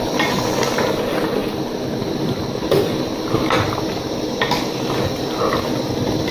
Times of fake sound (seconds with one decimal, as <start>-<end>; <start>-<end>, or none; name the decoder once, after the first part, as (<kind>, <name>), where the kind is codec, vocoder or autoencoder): none